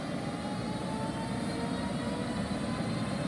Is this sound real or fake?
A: real